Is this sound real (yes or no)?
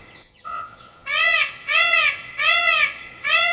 no